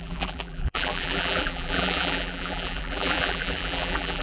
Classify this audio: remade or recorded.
remade